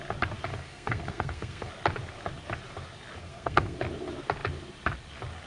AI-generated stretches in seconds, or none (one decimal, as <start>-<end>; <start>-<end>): 0.5-1.7; 3.2-3.8